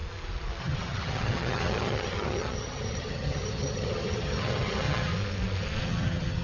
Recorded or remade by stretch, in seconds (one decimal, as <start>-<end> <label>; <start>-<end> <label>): 0.0-0.6 recorded; 0.6-5.1 remade; 5.1-5.8 recorded; 5.8-6.4 remade